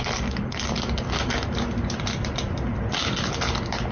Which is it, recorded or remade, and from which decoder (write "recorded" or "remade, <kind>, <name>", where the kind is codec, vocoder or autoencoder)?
recorded